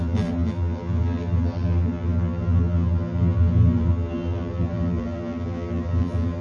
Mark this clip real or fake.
fake